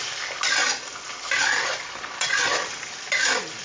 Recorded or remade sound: recorded